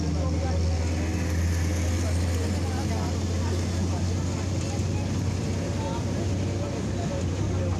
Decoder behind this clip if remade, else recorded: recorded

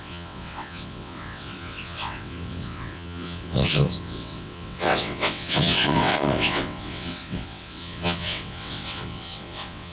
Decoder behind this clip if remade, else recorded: remade, vocoder, WaveNeXt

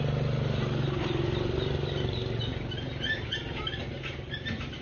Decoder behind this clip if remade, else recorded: recorded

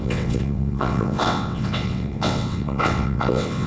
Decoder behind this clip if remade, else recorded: remade, vocoder, WaveNeXt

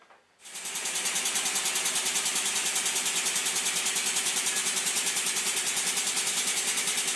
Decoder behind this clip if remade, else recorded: recorded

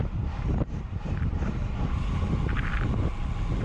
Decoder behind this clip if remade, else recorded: recorded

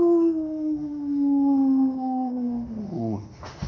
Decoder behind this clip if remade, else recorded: remade, autoencoder, DAC-VAE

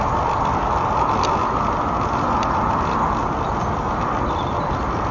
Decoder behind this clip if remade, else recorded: recorded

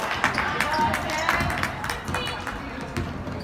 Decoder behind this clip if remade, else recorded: recorded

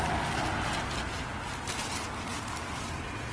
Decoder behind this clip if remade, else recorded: recorded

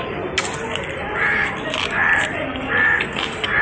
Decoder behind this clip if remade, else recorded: recorded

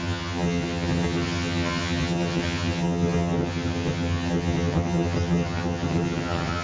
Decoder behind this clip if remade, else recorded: remade, vocoder, HiFi-GAN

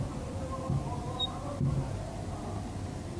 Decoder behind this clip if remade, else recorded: recorded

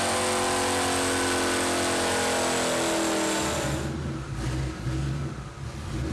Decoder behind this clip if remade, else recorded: recorded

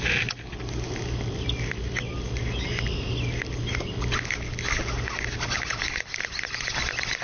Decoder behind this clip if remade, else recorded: recorded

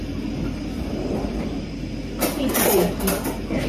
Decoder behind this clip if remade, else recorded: recorded